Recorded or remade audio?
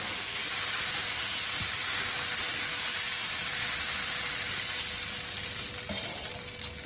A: recorded